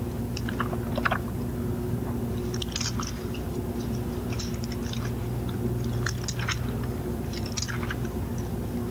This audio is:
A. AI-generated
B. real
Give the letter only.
B